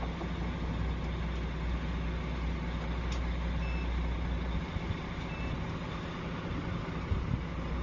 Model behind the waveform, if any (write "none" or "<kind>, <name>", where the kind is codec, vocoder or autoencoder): none